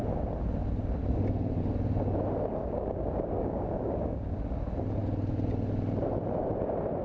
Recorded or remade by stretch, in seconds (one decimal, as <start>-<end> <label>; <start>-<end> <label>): 0.0-2.6 recorded; 2.6-4.4 remade; 4.4-7.0 recorded